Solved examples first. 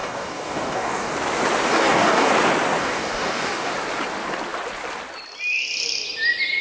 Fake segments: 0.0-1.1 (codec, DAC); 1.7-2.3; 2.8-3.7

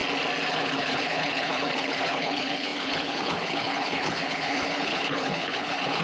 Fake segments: 0.5-6.0 (codec, HILCodec)

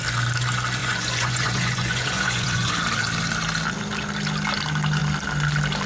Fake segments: 0.8-2.7 (vocoder, Vocos)

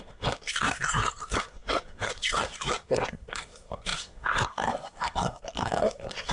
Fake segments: 0.0-6.3 (codec, SNAC)